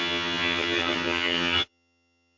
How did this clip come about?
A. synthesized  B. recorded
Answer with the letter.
A